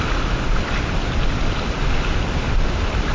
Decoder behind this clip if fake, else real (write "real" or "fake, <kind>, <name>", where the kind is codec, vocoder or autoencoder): real